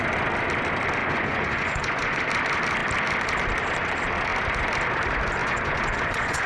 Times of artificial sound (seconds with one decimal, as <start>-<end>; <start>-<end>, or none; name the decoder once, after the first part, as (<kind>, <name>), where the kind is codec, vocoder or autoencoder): 1.0-2.2 (vocoder, Vocos); 5.4-6.5